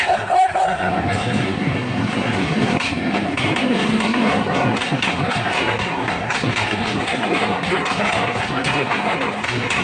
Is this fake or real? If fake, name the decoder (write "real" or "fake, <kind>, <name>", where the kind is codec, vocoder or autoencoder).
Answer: fake, codec, SNAC